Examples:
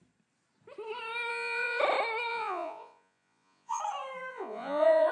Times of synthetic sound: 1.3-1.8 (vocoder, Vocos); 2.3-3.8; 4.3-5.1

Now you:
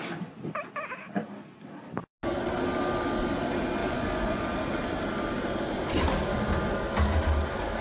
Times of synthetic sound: 3.8-4.4 (vocoder, Vocos)

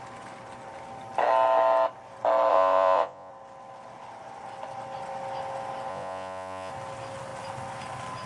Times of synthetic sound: 2.5-3.3 (vocoder, Vocos); 5.9-6.7

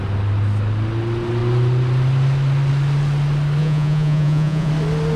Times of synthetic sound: 3.6-4.7 (vocoder, Vocos)

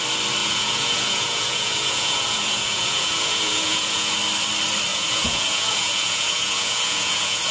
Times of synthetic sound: 0.4-4.1 (vocoder, Vocos); 4.9-7.5